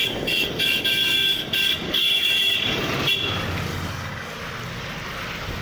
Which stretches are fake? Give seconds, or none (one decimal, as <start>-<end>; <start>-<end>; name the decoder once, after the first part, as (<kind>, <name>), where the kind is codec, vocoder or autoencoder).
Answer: 0.0-2.9 (codec, DAC); 3.7-4.3